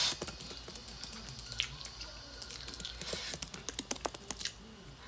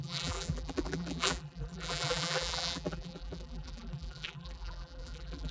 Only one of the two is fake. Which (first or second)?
second